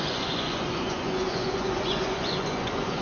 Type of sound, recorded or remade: remade